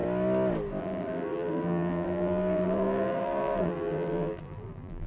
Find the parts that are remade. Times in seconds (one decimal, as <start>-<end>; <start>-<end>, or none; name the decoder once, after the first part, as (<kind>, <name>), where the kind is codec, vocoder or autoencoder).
0.8-5.1 (vocoder, BigVGAN v2)